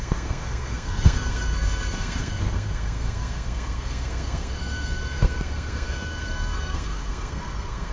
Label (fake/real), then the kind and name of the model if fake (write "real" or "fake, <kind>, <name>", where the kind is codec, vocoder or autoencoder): fake, codec, SNAC